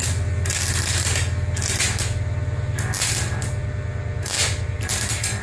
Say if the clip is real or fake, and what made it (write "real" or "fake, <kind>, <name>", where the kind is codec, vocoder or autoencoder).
real